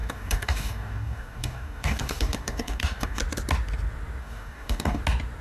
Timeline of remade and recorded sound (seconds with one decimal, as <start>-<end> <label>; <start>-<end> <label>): 0.0-3.2 remade; 3.2-4.2 recorded; 4.2-5.0 remade; 5.0-5.4 recorded

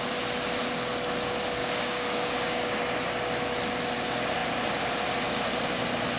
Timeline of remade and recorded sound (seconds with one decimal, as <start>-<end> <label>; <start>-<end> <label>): 0.0-1.6 recorded; 1.6-2.8 remade; 2.8-6.2 recorded